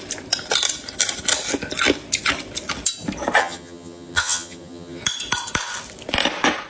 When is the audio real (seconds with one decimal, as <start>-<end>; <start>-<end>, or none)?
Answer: 0.0-3.4; 5.0-6.7